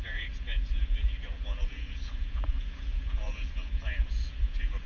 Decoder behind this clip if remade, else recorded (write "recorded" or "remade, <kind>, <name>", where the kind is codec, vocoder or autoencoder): remade, vocoder, Vocos